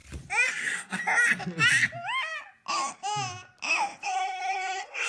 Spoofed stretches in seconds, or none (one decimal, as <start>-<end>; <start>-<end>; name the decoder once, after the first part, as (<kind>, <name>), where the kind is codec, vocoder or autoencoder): 0.5-1.0 (codec, SNAC); 4.0-5.1

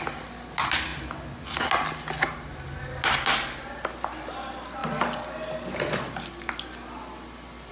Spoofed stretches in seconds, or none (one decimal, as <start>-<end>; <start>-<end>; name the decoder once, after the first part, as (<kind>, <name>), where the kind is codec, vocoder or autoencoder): none

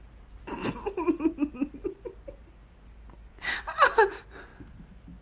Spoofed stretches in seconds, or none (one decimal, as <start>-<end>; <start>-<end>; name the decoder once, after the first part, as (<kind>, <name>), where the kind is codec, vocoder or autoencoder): none